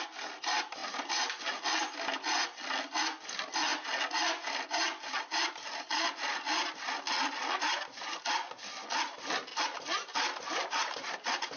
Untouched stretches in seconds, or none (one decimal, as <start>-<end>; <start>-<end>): 0.0-11.6